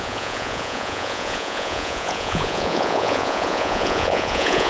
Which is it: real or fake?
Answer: fake